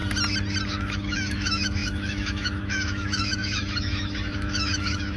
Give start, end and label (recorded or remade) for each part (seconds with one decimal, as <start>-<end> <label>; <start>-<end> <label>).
0.0-0.7 recorded; 0.7-5.2 remade